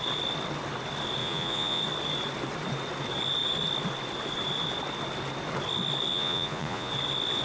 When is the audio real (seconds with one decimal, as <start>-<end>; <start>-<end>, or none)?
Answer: 0.0-1.2; 1.8-6.1; 6.9-7.4